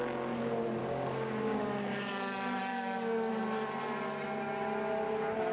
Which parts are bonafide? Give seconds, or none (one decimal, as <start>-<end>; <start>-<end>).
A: 0.0-0.8; 2.1-2.7; 3.3-5.5